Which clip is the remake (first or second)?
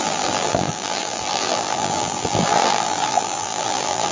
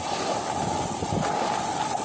first